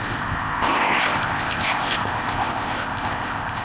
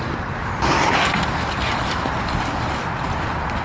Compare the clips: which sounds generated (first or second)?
first